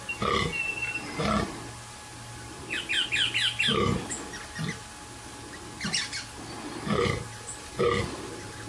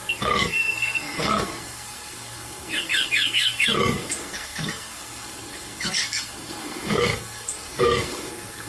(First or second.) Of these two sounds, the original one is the first